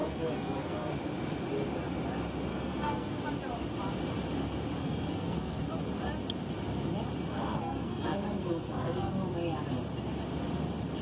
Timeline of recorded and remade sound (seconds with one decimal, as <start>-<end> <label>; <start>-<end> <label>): 0.0-0.9 remade; 0.9-2.5 recorded; 2.5-3.2 remade; 3.2-4.8 recorded; 4.8-5.6 remade; 5.6-7.3 recorded; 7.3-9.1 remade; 9.1-11.0 recorded